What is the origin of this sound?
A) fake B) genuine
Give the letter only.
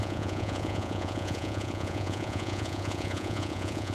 A